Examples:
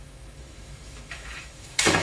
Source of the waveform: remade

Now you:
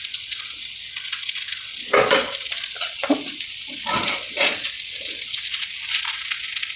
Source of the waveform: remade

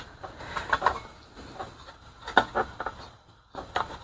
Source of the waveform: recorded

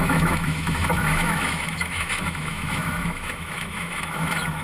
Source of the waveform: remade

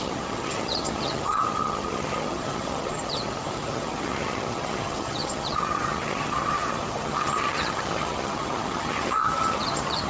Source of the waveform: remade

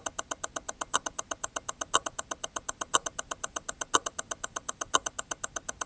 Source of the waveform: recorded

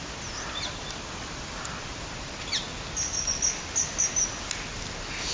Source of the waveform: recorded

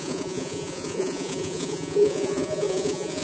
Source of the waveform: remade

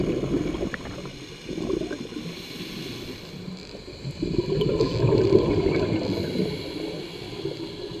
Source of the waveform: recorded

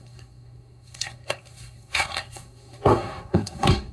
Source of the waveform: remade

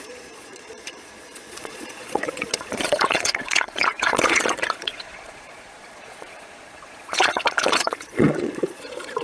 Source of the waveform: remade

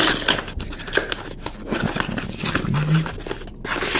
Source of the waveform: recorded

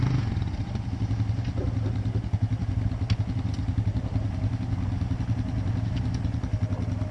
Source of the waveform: recorded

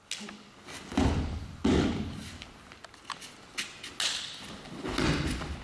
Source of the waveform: recorded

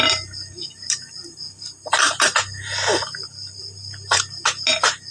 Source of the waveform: recorded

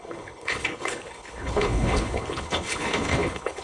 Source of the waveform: remade